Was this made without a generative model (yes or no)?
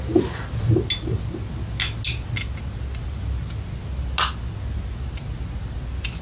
yes